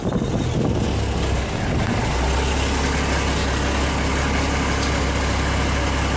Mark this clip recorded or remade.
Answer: recorded